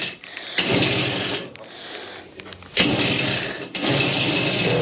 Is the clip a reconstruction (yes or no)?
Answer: no